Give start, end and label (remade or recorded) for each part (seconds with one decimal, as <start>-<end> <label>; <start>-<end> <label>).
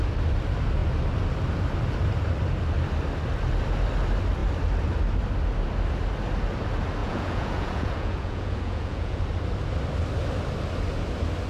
0.0-7.0 recorded; 7.0-9.2 remade; 9.2-11.5 recorded